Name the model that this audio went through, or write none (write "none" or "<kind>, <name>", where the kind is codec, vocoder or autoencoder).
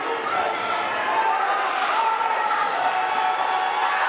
none